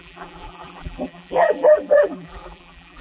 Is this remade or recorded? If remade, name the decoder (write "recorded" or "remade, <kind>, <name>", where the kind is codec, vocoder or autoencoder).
remade, vocoder, BigVGAN v2